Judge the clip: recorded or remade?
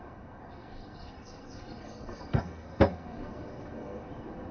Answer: remade